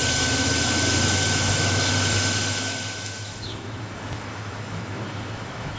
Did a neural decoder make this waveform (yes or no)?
yes